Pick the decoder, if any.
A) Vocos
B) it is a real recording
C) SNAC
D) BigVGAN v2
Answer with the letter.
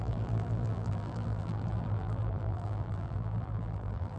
D